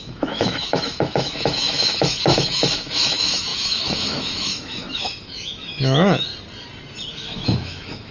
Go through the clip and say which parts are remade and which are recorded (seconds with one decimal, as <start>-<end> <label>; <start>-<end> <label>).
0.0-6.3 remade; 6.3-7.1 recorded; 7.1-8.1 remade